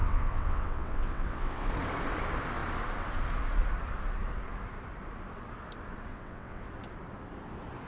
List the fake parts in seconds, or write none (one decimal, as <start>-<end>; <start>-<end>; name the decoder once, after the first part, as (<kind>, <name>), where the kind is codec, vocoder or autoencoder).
0.0-1.7 (vocoder, WaveNeXt); 6.1-6.7